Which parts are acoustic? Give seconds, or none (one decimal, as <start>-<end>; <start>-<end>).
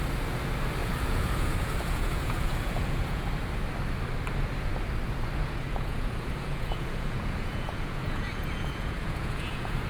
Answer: 0.0-0.8; 3.2-5.4